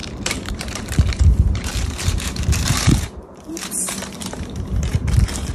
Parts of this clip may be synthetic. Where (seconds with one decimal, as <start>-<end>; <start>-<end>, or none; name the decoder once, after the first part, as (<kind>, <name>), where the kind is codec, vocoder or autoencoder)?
0.0-5.5 (vocoder, BigVGAN v2)

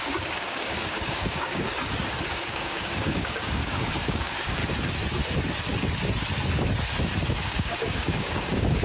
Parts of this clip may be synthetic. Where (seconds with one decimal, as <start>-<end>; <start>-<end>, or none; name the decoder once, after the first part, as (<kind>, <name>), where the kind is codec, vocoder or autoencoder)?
0.0-1.7 (codec, DAC); 2.3-4.6; 7.3-8.8